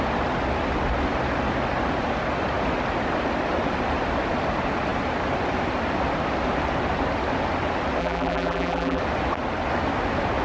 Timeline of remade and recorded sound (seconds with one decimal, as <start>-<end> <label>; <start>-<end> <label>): 0.0-8.0 recorded; 8.0-9.0 remade; 9.0-10.4 recorded